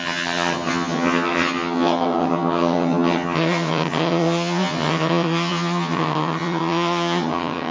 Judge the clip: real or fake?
fake